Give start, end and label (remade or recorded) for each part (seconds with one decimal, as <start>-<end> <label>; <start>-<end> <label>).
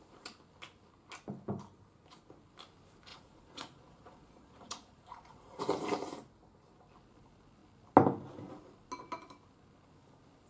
0.0-3.1 recorded; 3.1-5.6 remade; 5.6-10.5 recorded